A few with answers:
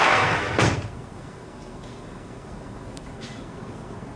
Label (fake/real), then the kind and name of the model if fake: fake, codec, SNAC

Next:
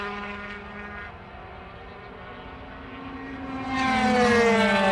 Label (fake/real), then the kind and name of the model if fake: real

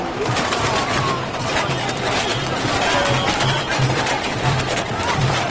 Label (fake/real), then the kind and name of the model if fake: fake, vocoder, BigVGAN v2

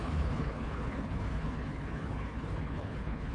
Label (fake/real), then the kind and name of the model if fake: fake, codec, HILCodec